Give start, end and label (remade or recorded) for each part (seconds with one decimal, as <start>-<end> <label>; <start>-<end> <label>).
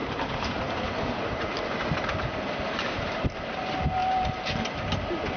0.0-3.0 remade; 3.0-4.0 recorded; 4.0-4.6 remade; 4.6-5.4 recorded